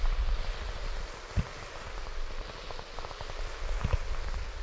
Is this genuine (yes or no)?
yes